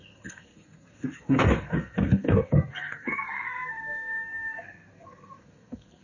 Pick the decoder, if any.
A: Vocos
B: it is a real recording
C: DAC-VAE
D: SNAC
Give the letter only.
D